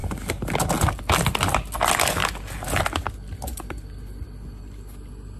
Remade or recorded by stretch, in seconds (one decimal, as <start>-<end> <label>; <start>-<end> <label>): 0.0-5.4 recorded